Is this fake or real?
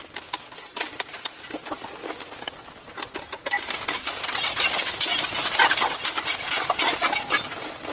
real